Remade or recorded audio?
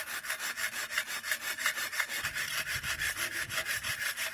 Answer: recorded